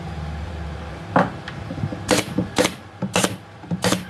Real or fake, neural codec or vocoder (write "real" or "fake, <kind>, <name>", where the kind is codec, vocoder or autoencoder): fake, vocoder, BigVGAN v2